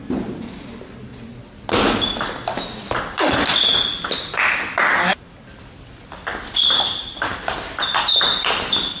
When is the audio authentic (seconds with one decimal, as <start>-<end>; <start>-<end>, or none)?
1.1-5.5